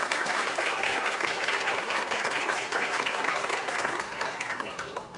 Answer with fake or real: fake